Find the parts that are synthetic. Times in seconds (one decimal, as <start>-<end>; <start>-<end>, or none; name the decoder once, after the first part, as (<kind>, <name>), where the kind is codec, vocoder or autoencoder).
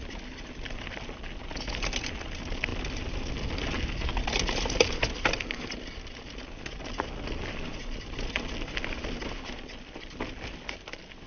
none